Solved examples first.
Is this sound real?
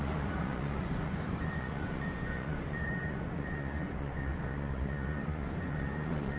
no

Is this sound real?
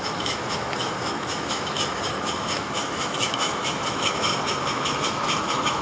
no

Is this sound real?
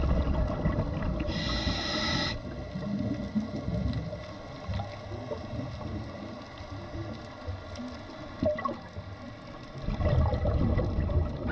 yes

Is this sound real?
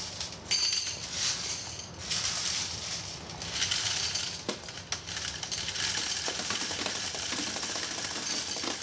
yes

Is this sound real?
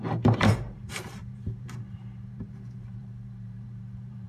no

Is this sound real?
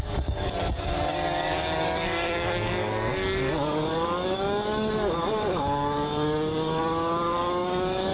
no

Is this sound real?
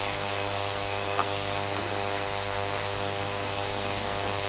no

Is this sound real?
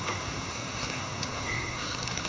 no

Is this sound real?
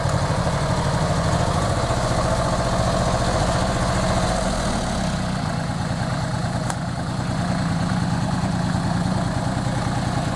no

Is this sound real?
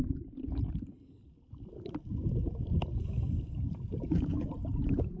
yes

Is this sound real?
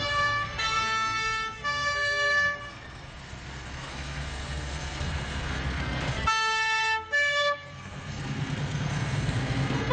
no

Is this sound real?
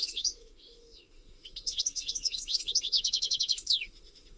no